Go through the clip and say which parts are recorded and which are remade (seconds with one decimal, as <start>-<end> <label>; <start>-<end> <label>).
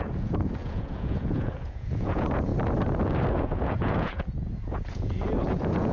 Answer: 0.0-2.5 remade; 2.5-3.3 recorded; 3.3-5.9 remade